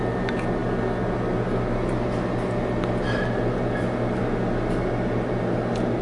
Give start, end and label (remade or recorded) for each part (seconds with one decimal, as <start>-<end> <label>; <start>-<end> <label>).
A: 0.0-6.0 recorded